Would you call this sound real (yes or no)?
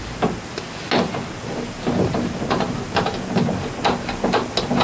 yes